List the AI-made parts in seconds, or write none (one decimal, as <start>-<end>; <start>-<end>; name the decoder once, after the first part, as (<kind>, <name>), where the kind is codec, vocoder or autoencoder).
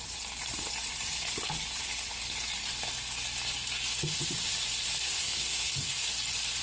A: 5.0-6.1 (codec, SNAC)